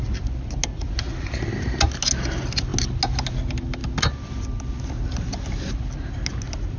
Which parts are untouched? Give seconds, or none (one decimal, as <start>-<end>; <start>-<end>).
0.0-6.8